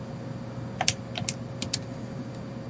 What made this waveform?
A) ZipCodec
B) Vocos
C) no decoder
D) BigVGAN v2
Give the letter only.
C